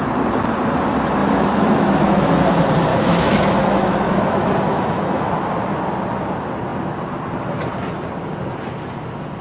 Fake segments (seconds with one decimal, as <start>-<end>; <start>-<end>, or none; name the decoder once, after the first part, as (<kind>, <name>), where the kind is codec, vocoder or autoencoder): 1.2-2.4 (autoencoder, DAC-VAE); 2.9-5.3